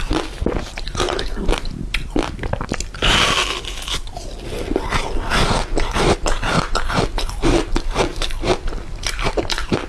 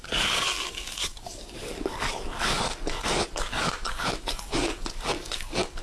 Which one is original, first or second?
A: first